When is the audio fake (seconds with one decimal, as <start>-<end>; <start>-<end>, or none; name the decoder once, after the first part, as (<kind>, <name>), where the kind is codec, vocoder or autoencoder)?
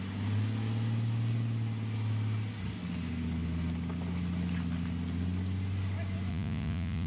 6.3-7.1 (vocoder, Vocos)